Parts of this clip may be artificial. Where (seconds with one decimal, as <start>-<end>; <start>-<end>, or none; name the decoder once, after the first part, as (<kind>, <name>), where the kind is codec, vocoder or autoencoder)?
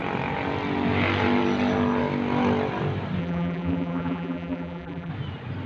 3.2-5.1 (vocoder, BigVGAN v2)